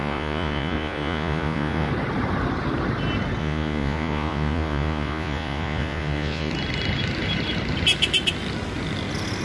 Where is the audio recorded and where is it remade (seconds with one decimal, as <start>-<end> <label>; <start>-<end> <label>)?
0.0-1.9 remade; 1.9-3.4 recorded; 3.4-6.5 remade; 6.5-9.4 recorded